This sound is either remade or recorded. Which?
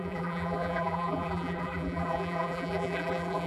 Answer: remade